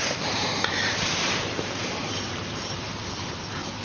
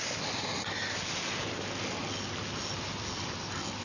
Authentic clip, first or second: second